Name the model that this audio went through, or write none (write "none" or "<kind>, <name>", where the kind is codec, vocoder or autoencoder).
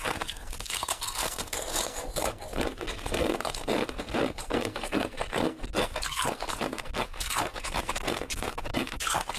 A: codec, SNAC